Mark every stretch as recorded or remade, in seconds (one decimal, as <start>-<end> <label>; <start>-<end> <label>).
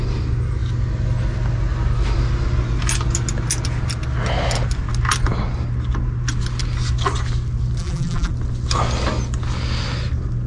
0.0-7.8 recorded; 7.8-8.3 remade; 8.3-10.5 recorded